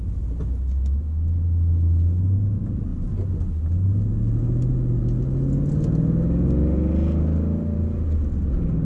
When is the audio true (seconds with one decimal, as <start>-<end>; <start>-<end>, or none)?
0.0-8.8